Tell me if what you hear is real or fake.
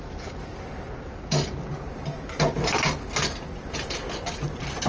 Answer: real